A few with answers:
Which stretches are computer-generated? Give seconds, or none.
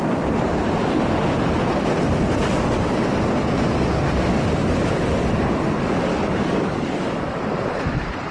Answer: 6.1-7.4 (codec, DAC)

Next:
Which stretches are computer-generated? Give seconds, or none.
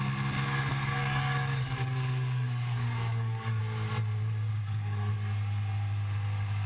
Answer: 1.0-3.6 (codec, DAC); 4.5-5.1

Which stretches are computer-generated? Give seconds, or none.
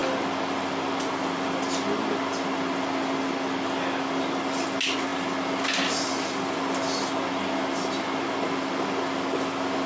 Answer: none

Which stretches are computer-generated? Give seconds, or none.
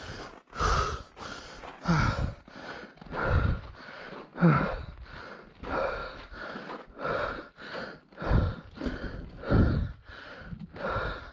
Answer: none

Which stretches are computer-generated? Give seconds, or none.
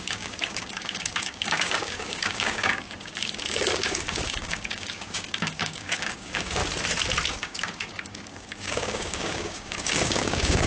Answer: 0.0-6.6 (codec, DAC); 7.3-10.7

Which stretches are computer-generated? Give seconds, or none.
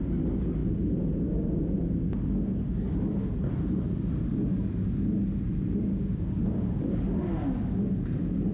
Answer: 5.9-7.2 (codec, DAC)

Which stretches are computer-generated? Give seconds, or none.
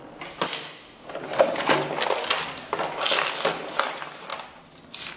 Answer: none